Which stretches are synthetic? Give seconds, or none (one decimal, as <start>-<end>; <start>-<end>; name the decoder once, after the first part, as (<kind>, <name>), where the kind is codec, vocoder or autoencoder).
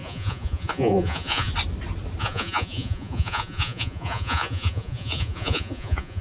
0.0-1.5 (vocoder, Vocos); 2.2-6.2